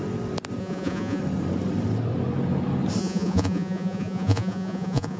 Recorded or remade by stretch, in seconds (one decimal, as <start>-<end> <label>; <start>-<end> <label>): 0.0-0.6 recorded; 0.6-1.2 remade; 1.2-3.0 recorded; 3.0-5.2 remade